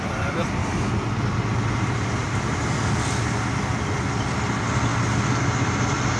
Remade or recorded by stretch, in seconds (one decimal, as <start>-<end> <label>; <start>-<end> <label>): 0.0-6.2 recorded